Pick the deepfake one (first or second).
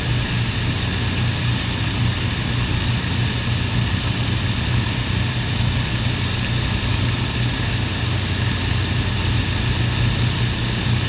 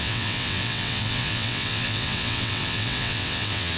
second